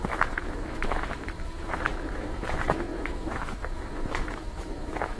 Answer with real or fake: fake